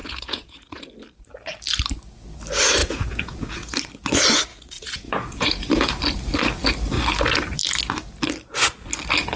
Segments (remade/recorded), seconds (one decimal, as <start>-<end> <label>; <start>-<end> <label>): 0.0-0.9 remade; 0.9-2.8 recorded; 2.8-3.8 remade; 3.8-4.5 recorded; 4.5-5.9 remade; 5.9-9.4 recorded